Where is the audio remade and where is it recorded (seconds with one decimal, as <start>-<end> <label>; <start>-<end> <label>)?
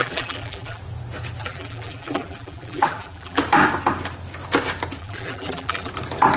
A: 0.0-0.8 remade; 0.8-1.4 recorded; 1.4-3.4 remade; 3.4-5.0 recorded; 5.0-5.9 remade; 5.9-6.4 recorded